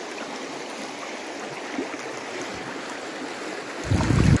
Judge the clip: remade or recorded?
recorded